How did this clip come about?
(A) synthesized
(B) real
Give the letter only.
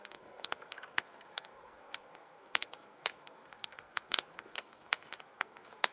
A